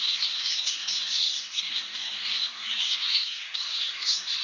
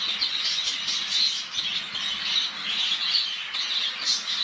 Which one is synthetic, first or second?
first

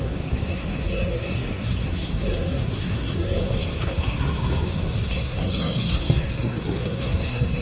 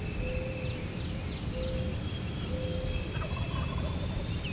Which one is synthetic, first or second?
first